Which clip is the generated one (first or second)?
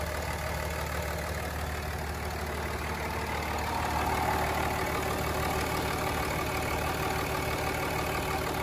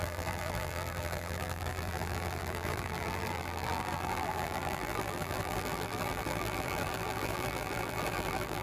second